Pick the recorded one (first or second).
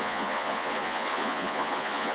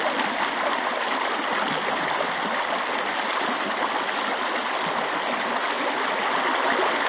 second